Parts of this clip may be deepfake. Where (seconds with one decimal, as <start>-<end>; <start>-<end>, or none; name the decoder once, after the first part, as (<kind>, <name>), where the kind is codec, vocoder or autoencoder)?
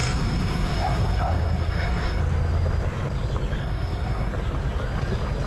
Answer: 0.0-2.2 (codec, SNAC); 3.6-4.3